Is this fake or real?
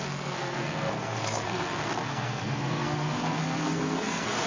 fake